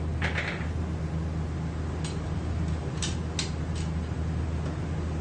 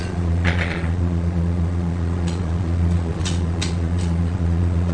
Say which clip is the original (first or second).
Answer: first